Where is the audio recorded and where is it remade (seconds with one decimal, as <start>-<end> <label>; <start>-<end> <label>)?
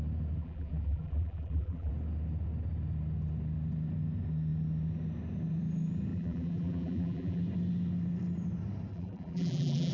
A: 0.0-0.4 recorded; 0.4-1.9 remade; 1.9-6.1 recorded; 6.1-7.4 remade; 7.4-8.9 recorded; 8.9-9.9 remade